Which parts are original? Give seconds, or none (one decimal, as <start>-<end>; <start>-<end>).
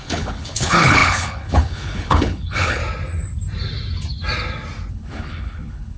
2.8-4.9